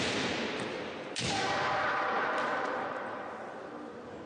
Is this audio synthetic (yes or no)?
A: yes